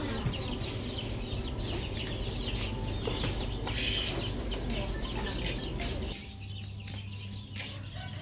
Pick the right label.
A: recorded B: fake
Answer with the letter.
A